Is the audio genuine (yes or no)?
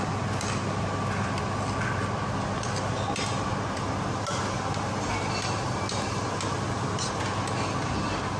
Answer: yes